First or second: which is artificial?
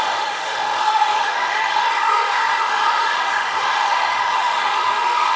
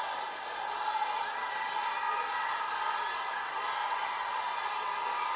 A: first